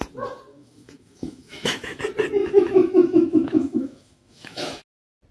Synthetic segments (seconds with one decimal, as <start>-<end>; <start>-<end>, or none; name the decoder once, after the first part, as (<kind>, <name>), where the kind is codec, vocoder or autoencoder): 0.5-2.0 (autoencoder, DAC-VAE); 2.4-4.8